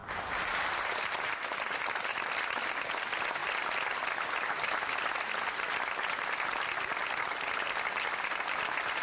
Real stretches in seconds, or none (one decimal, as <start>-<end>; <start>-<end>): 0.0-9.0